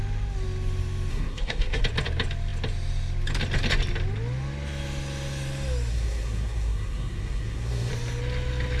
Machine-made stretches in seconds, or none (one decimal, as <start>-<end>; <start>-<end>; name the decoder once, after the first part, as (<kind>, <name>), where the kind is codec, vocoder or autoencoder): 1.1-1.8 (codec, SNAC); 5.9-7.9